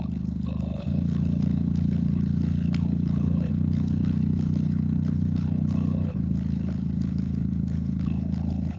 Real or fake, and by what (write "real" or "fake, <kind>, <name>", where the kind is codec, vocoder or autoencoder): fake, codec, HILCodec